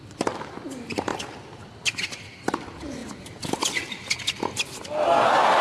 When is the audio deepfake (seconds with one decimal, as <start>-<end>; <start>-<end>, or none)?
0.0-5.6